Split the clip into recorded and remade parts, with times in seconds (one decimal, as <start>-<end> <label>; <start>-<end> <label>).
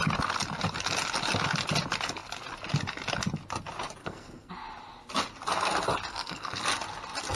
0.0-4.0 recorded; 4.0-4.5 remade; 4.5-6.1 recorded; 6.1-6.6 remade; 6.6-7.4 recorded